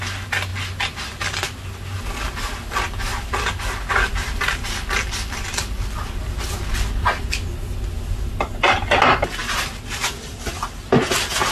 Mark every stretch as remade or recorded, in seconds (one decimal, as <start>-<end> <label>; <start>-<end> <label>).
0.0-0.5 recorded; 0.5-1.6 remade; 1.6-3.1 recorded; 3.1-6.6 remade; 6.6-11.5 recorded